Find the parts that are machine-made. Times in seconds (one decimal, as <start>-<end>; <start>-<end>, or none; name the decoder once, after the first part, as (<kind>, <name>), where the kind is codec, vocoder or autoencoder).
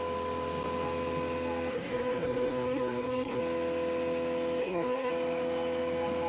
1.7-3.4 (codec, SNAC); 4.6-5.1